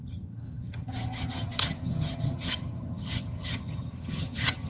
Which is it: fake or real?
fake